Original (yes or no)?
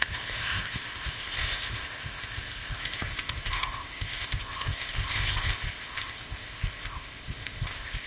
no